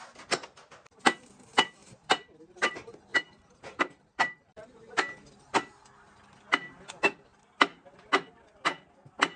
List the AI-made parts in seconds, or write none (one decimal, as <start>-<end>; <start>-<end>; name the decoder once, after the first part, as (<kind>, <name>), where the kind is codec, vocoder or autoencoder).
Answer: 1.8-2.7 (vocoder, BigVGAN v2); 3.1-4.9